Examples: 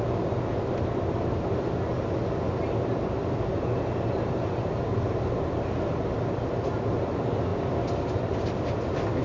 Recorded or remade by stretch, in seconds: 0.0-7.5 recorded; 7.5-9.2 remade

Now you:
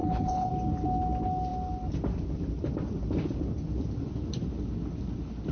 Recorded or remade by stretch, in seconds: 0.0-0.5 remade; 0.5-5.5 recorded

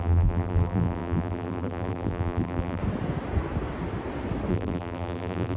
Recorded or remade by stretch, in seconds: 0.0-2.8 remade; 2.8-4.5 recorded; 4.5-5.6 remade